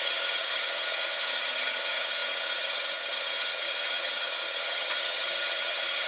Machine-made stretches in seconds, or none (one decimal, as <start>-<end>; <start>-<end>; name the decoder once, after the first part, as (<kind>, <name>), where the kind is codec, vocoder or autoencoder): 0.0-6.1 (vocoder, HiFi-GAN)